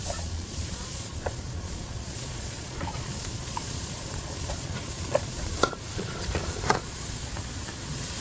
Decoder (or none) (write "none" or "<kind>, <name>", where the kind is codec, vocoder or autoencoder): vocoder, Vocos